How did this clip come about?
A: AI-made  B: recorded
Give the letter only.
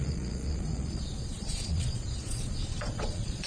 A